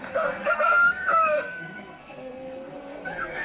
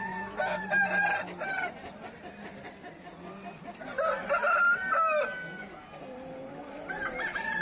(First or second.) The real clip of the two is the second